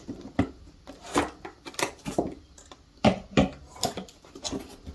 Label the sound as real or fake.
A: real